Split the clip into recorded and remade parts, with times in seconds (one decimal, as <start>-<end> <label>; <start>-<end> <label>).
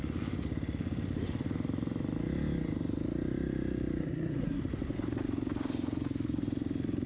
0.0-4.0 recorded; 4.0-4.6 remade; 4.6-7.1 recorded